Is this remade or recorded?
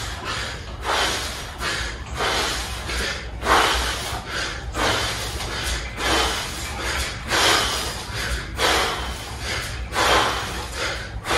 remade